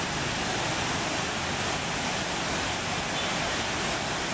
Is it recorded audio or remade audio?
recorded